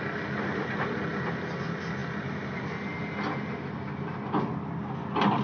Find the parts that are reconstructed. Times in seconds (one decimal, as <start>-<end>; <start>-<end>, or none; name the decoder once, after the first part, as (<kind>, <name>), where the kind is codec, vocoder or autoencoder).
none